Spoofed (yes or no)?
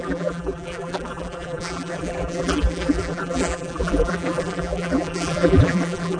yes